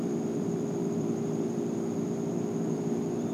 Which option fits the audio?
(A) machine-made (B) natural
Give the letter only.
A